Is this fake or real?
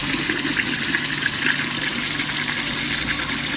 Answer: real